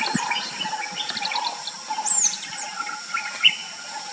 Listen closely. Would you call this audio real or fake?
real